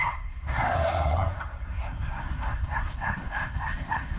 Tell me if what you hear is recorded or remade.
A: remade